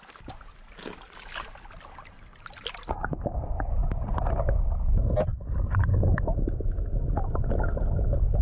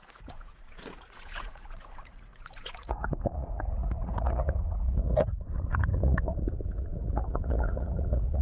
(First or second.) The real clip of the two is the first